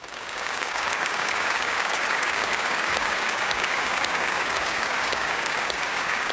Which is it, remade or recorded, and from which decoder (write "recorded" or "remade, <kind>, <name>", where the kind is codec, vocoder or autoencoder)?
remade, codec, DAC